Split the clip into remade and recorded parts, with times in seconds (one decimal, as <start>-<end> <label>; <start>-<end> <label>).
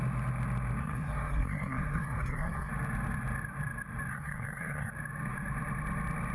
0.0-0.8 recorded; 0.8-2.7 remade; 2.7-4.1 recorded; 4.1-4.9 remade; 4.9-6.3 recorded